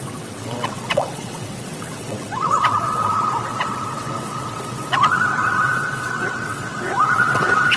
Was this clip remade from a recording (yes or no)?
yes